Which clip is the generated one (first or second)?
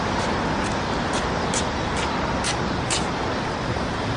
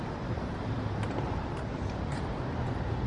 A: second